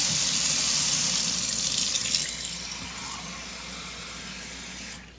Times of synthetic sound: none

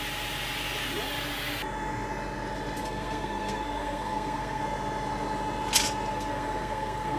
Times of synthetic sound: 2.8-4.6 (codec, SNAC); 6.1-7.2

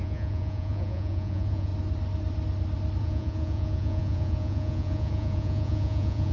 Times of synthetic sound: 0.0-1.7 (vocoder, Vocos); 3.0-6.3

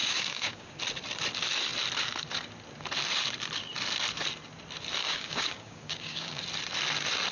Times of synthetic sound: 0.0-0.8 (codec, DAC); 5.0-6.4

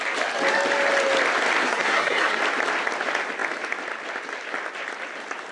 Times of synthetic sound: 1.6-2.4 (codec, SNAC)